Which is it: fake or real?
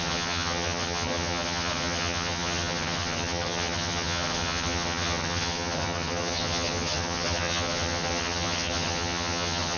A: fake